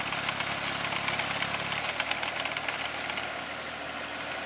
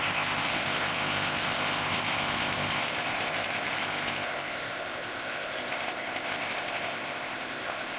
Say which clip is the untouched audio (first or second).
first